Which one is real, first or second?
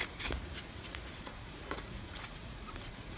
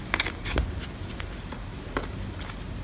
second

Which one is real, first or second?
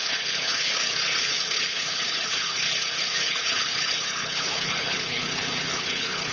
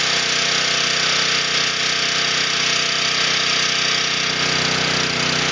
second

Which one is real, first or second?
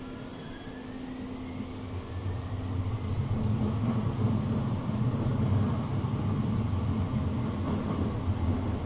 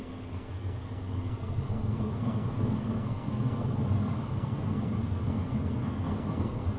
first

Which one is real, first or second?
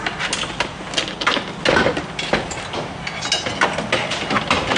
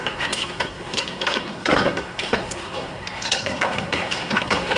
first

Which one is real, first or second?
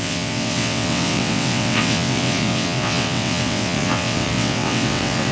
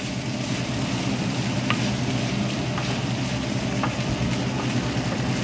second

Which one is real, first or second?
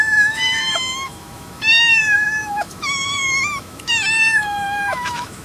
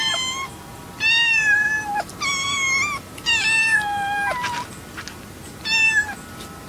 second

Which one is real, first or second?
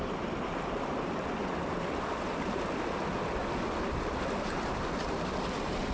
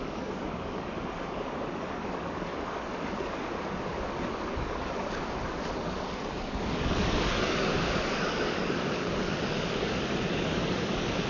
first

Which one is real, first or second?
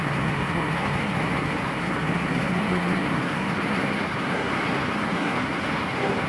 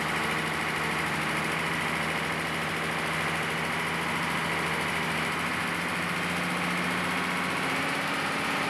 second